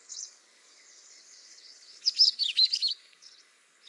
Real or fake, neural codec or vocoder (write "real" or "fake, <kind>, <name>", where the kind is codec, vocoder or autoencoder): fake, codec, DAC